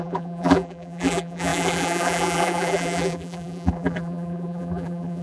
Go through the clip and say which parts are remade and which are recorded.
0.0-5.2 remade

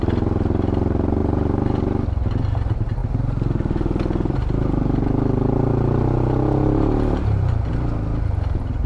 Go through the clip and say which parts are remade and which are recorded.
0.0-8.9 recorded

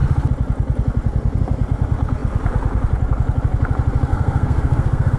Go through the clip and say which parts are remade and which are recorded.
0.0-4.1 recorded; 4.1-5.2 remade

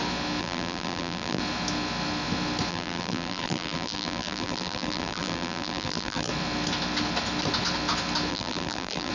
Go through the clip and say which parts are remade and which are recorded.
0.0-0.4 recorded; 0.4-1.4 remade; 1.4-2.7 recorded; 2.7-6.3 remade; 6.3-8.3 recorded; 8.3-9.1 remade

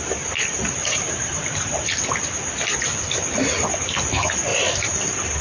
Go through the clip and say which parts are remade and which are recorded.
0.0-0.8 recorded; 0.8-2.1 remade; 2.1-4.5 recorded; 4.5-5.4 remade